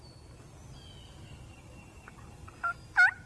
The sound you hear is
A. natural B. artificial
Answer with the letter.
A